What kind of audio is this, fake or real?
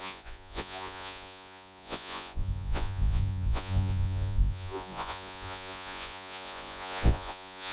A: fake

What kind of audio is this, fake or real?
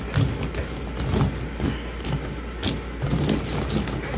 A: real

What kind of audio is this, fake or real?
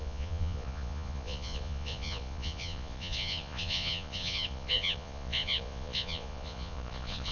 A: fake